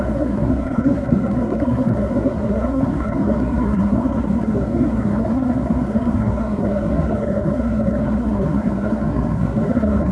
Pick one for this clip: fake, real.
fake